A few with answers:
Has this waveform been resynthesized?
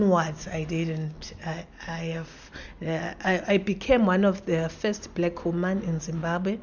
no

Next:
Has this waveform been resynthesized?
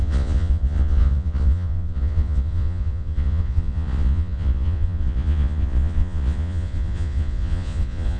yes